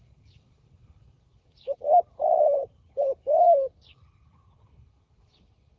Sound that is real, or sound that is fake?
fake